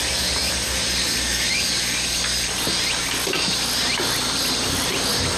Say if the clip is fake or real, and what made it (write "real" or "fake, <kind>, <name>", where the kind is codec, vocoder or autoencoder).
real